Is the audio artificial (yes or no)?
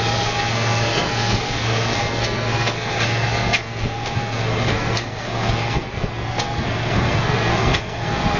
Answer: yes